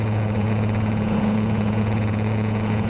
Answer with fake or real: fake